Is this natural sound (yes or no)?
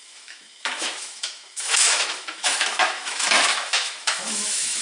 no